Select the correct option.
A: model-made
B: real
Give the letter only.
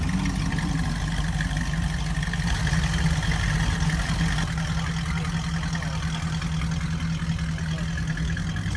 B